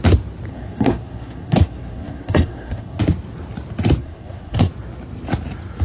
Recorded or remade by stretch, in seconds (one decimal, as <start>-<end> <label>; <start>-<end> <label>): 0.0-0.5 recorded; 0.5-3.0 remade; 3.0-4.0 recorded; 4.0-4.7 remade; 4.7-5.8 recorded